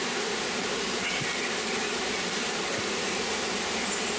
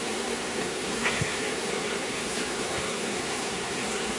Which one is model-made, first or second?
second